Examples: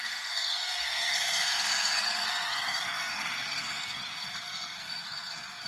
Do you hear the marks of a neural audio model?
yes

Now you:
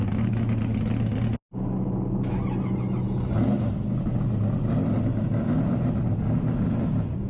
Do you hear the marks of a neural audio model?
no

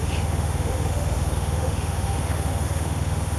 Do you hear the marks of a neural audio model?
yes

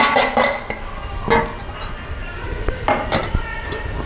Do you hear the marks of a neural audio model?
no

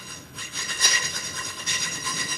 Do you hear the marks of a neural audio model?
yes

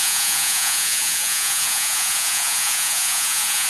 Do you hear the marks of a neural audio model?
yes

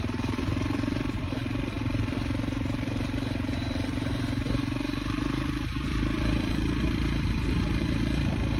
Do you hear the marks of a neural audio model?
yes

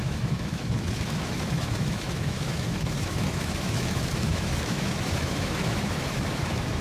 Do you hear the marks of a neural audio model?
yes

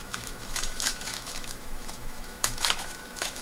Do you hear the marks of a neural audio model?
yes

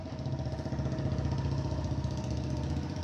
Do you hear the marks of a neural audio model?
no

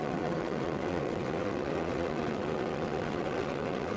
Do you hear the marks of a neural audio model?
yes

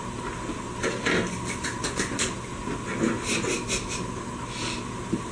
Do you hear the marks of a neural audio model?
no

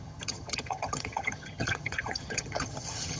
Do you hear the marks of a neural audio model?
yes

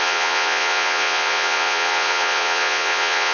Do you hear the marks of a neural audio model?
yes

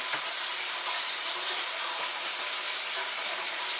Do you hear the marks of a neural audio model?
no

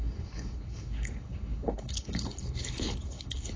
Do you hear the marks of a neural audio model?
yes